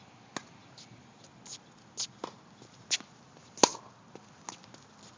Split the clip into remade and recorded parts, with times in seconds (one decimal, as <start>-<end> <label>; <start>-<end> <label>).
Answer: 0.0-0.6 recorded; 0.6-1.3 remade; 1.3-5.2 recorded

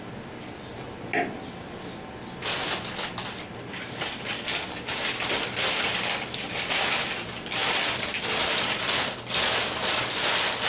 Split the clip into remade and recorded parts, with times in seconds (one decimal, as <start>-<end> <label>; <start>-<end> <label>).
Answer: 0.0-10.7 recorded

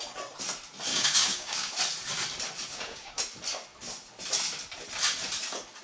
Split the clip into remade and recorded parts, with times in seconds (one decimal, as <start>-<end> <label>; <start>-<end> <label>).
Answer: 0.0-0.9 recorded; 0.9-1.7 remade; 1.7-2.7 recorded; 2.7-3.2 remade; 3.2-5.8 recorded

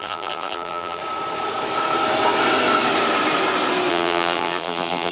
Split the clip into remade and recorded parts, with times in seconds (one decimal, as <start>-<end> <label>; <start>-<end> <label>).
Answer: 0.0-1.0 remade; 1.0-3.9 recorded; 3.9-5.1 remade

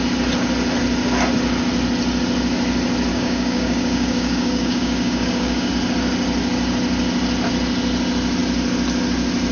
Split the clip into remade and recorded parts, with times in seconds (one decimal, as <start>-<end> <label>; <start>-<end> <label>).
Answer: 0.0-3.1 recorded; 3.1-5.7 remade; 5.7-9.5 recorded

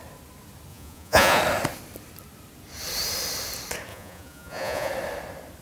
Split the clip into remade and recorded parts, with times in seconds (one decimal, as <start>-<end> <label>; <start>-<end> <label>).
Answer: 0.0-0.7 recorded; 0.7-1.4 remade; 1.4-3.9 recorded; 3.9-4.9 remade; 4.9-5.6 recorded

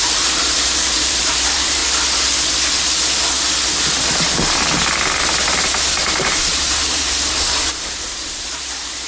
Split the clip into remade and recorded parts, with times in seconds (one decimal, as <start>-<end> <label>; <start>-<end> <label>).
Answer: 0.0-1.8 remade; 1.8-5.8 recorded; 5.8-9.1 remade